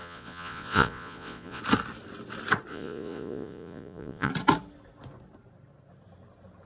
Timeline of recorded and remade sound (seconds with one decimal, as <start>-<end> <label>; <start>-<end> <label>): 0.0-1.6 remade; 1.6-2.7 recorded; 2.7-4.3 remade; 4.3-6.7 recorded